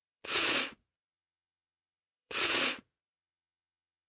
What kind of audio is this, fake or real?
fake